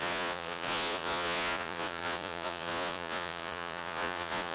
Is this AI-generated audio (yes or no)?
yes